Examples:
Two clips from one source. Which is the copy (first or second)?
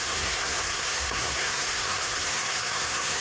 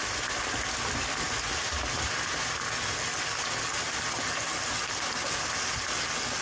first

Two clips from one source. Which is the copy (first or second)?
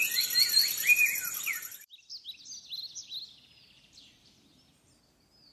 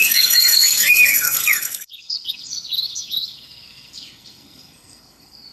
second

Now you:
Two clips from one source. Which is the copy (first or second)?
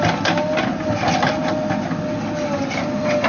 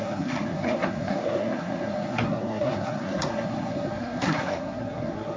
second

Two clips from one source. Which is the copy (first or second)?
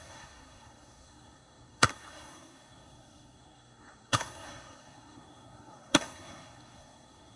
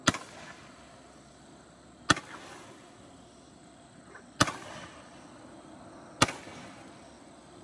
first